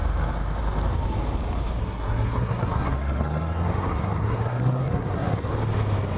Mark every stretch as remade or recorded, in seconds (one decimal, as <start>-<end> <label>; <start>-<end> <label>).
0.0-1.8 recorded; 1.8-5.5 remade; 5.5-6.2 recorded